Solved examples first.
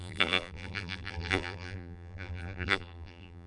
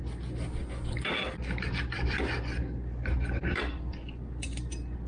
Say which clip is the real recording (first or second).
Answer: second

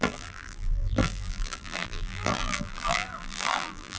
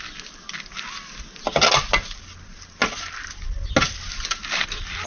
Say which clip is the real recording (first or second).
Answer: second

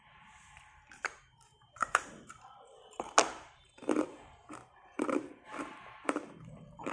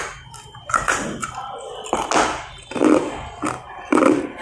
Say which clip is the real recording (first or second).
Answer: second